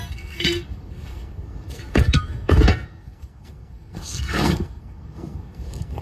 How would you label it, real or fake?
fake